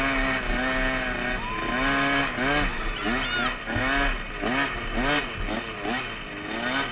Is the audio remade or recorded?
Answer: recorded